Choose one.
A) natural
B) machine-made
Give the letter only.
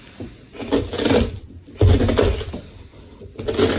A